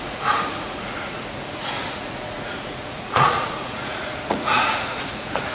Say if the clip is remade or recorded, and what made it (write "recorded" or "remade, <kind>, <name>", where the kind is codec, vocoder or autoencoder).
remade, vocoder, Vocos